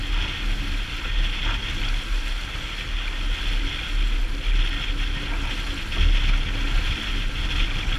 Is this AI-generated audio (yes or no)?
no